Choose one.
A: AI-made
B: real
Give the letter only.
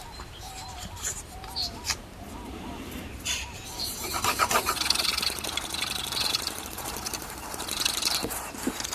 A